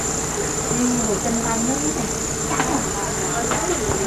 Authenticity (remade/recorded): recorded